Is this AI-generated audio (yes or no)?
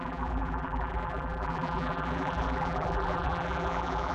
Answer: yes